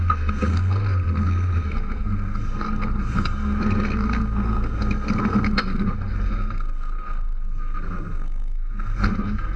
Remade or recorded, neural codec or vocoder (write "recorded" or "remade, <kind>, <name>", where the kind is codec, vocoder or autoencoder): remade, codec, SNAC